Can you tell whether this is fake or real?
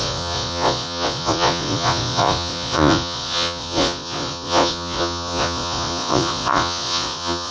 fake